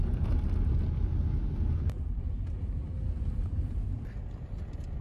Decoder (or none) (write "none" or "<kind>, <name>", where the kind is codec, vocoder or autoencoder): none